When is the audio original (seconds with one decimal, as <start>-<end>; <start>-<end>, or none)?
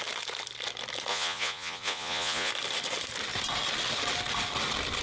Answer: 0.0-1.1; 2.5-5.0